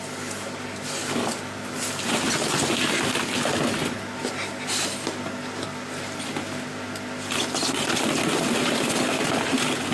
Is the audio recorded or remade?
recorded